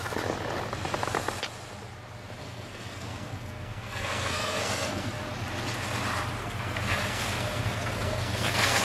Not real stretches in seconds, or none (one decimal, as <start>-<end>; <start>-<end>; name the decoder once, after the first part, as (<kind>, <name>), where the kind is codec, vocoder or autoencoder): 2.4-5.1 (codec, SNAC); 6.4-8.8